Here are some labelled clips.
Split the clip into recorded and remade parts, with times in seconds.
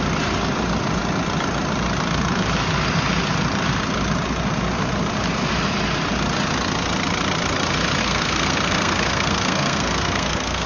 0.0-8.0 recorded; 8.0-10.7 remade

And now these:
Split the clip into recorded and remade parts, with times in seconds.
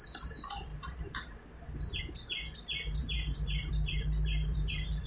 0.0-3.0 recorded; 3.0-3.7 remade; 3.7-5.1 recorded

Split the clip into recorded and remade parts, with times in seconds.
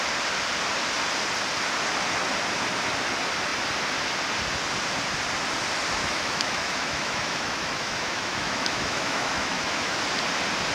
0.0-6.0 recorded; 6.0-10.0 remade; 10.0-10.7 recorded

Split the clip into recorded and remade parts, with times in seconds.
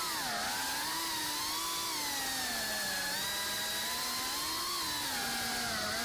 0.0-6.0 recorded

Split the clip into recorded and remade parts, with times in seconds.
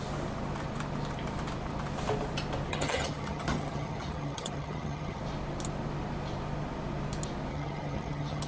0.0-2.7 recorded; 2.7-5.2 remade; 5.2-7.5 recorded; 7.5-8.5 remade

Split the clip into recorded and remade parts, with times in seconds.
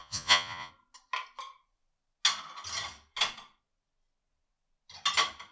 0.0-0.7 remade; 0.7-5.5 recorded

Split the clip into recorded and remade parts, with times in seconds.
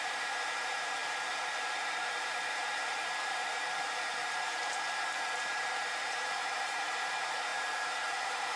0.0-8.6 remade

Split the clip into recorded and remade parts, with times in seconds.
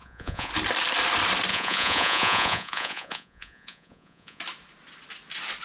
0.0-0.5 remade; 0.5-1.5 recorded; 1.5-4.4 remade; 4.4-5.6 recorded